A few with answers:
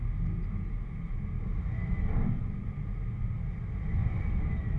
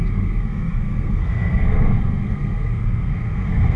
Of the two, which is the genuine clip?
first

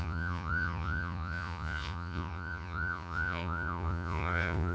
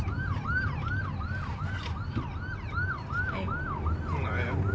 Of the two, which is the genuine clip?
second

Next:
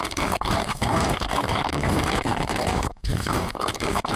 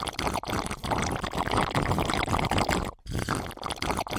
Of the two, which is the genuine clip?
second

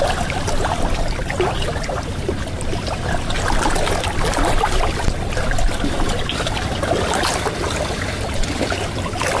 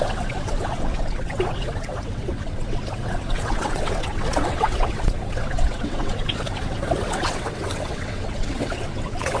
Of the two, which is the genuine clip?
first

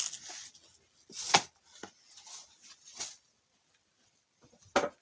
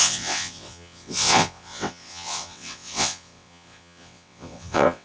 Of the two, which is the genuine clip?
first